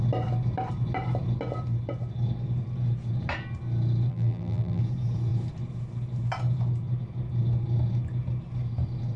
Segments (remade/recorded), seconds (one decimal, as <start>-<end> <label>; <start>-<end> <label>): 0.0-4.1 recorded; 4.1-4.8 remade; 4.8-9.2 recorded